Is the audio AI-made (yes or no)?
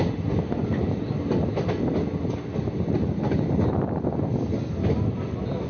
no